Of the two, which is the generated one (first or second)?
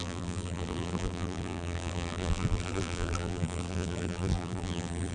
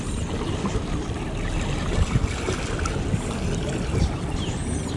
first